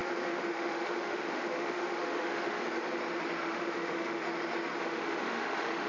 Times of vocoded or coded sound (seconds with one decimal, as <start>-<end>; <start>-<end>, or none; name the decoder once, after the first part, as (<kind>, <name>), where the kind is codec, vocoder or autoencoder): 0.0-2.6 (autoencoder, DAC-VAE); 3.4-4.2; 4.8-5.9